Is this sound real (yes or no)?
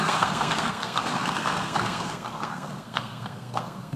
no